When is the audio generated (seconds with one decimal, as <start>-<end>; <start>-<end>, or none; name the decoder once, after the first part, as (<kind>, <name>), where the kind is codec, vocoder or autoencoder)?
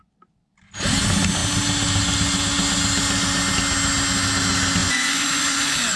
4.8-6.0 (vocoder, Vocos)